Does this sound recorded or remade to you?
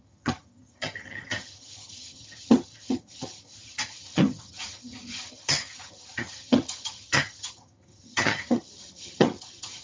remade